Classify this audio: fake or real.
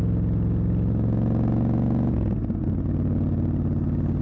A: real